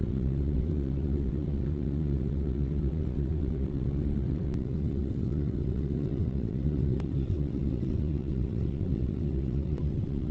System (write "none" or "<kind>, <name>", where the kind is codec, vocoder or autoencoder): vocoder, WaveNeXt